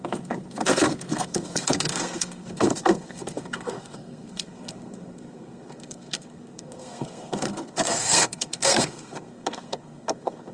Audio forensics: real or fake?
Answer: fake